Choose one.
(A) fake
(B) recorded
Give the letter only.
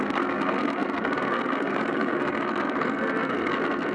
A